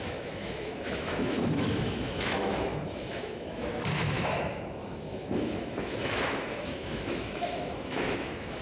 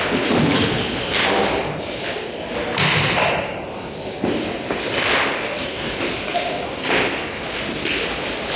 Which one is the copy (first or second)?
first